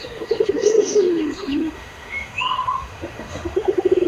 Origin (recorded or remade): remade